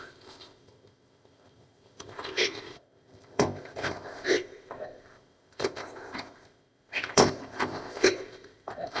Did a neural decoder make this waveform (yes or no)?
yes